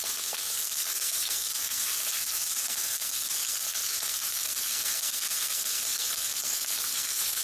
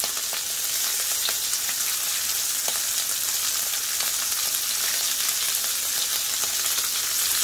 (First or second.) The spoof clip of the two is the first